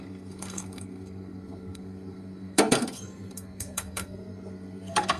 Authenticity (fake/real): fake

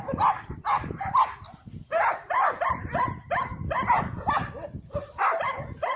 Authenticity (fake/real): real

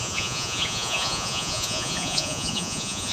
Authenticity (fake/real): fake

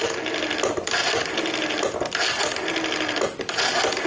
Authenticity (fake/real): real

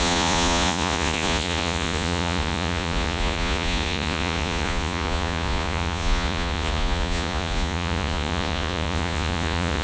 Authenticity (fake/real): fake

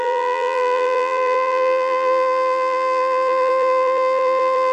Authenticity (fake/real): fake